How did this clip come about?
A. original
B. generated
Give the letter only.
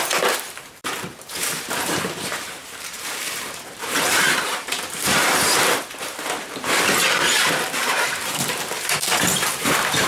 B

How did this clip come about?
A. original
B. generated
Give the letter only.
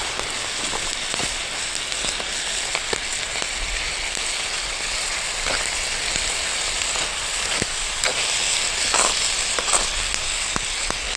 A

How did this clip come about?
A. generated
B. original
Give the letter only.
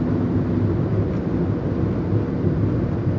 B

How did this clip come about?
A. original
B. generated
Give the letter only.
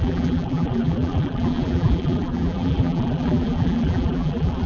B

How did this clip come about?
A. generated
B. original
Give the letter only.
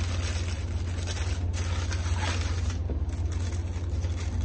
B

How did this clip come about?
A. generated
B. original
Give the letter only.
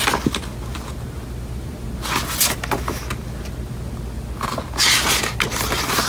B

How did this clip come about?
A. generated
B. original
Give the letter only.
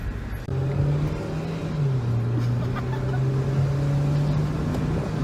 B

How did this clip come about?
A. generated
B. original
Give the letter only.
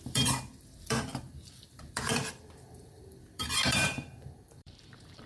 A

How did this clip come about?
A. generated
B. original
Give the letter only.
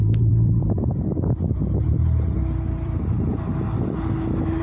A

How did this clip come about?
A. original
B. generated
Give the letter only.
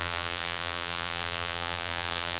B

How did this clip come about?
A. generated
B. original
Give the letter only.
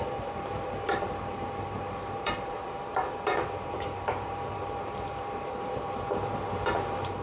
A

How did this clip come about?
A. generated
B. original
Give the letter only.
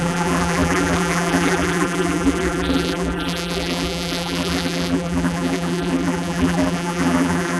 A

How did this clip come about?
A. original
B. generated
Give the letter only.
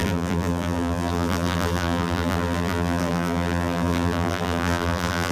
B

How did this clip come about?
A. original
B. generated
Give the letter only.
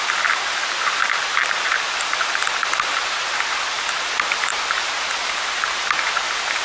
B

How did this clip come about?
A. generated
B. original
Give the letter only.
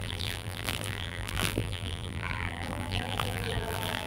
A